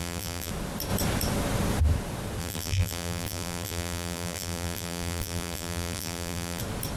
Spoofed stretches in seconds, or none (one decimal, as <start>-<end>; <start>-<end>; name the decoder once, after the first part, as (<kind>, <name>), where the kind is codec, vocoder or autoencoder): 0.0-0.5 (vocoder, BigVGAN v2); 2.4-6.6